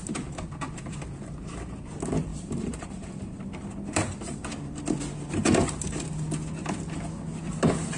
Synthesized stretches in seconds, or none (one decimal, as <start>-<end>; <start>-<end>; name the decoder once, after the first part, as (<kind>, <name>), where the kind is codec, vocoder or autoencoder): 2.3-4.8 (vocoder, BigVGAN v2)